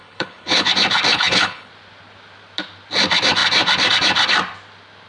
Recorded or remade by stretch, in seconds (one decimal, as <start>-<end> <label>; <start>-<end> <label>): 0.0-0.7 remade; 0.7-1.1 recorded; 1.1-1.7 remade; 1.7-5.1 recorded